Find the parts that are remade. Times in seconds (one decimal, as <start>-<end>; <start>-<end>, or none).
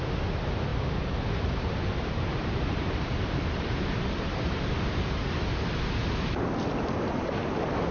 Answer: 0.7-5.2